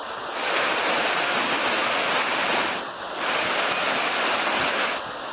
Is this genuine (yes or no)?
yes